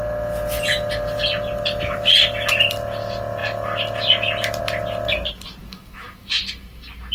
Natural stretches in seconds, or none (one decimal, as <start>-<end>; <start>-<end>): 0.0-5.6; 6.4-7.1